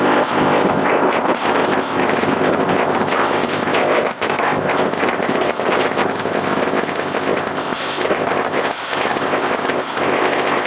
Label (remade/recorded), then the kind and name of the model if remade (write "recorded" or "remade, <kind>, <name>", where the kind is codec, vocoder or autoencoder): remade, codec, ZipCodec